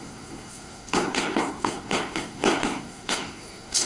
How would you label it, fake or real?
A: fake